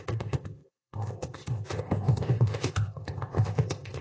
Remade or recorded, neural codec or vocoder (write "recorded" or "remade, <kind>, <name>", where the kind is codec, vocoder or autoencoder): remade, codec, ZipCodec